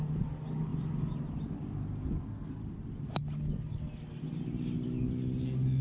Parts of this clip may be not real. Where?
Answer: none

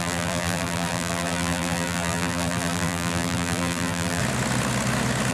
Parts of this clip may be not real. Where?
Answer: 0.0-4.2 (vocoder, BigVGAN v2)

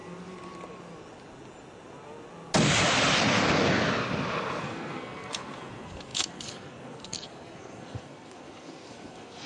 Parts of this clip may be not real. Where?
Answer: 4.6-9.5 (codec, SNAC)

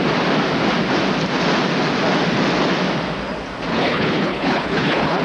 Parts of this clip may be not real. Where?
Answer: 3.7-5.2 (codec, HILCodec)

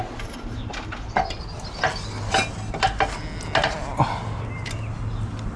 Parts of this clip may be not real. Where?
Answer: none